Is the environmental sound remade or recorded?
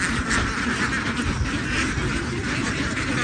recorded